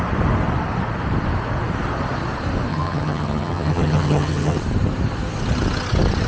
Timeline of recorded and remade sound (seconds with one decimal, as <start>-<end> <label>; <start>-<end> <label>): 0.0-2.7 recorded; 2.7-4.6 remade; 4.6-6.3 recorded